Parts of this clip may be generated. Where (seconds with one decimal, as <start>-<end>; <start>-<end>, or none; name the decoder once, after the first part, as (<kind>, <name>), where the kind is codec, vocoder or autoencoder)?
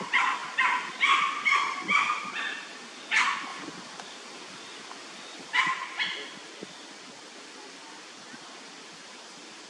none